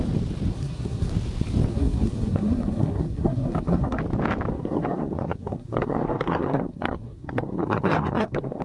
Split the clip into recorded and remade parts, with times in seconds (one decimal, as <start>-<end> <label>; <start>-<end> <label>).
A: 0.0-0.5 recorded; 0.5-1.1 remade; 1.1-1.7 recorded; 1.7-4.0 remade; 4.0-4.5 recorded; 4.5-8.6 remade